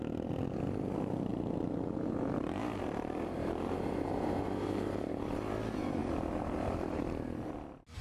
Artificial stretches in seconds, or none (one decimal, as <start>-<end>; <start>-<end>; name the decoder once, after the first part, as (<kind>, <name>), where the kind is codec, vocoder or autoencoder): 1.3-5.1 (vocoder, BigVGAN v2); 6.0-7.0